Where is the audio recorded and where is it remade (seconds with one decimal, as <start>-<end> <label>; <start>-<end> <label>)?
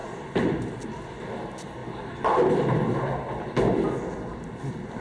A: 0.0-5.0 recorded